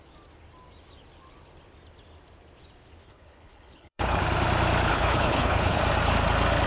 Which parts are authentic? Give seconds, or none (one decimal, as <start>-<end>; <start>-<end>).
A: 0.0-3.0; 4.2-4.9; 5.8-6.7